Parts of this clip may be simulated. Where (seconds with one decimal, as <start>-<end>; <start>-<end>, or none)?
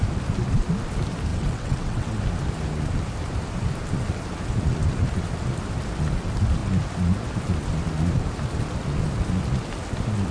1.3-2.2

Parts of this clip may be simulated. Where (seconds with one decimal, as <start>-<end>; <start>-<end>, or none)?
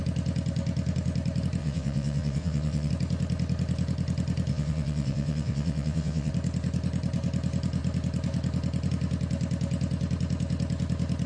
1.6-2.9; 4.5-6.3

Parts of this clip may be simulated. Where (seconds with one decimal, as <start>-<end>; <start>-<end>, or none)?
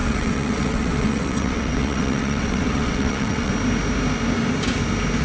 0.0-3.5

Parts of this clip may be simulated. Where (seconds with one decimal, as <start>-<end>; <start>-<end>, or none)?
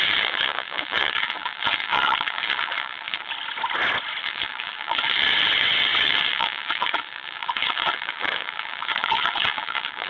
0.0-3.3; 4.2-10.1